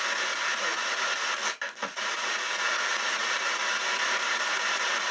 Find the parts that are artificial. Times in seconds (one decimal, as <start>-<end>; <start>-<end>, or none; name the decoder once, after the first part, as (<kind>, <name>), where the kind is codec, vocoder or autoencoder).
0.5-1.0 (vocoder, Vocos); 1.9-3.8